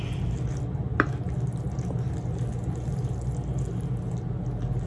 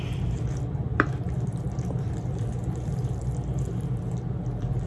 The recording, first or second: first